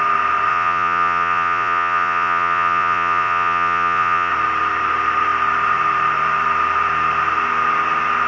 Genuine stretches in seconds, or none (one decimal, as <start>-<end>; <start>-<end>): 0.0-0.5; 4.3-8.3